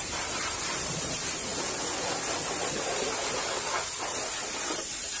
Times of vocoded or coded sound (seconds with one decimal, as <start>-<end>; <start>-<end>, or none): 0.0-1.5; 4.6-5.2